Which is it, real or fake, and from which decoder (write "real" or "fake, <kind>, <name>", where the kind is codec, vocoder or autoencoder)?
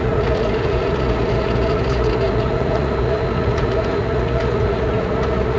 fake, vocoder, Vocos